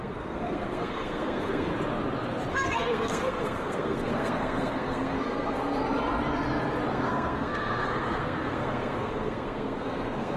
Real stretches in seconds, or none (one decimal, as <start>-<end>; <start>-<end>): 1.7-2.5; 5.8-6.9